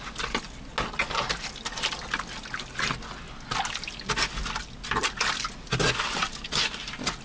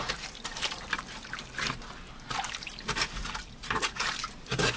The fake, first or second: second